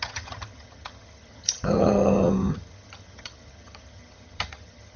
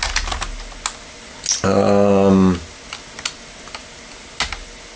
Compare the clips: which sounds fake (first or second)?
first